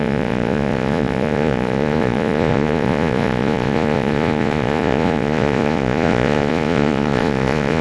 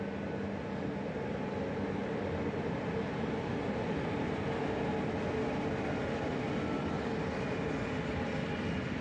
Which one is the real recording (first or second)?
second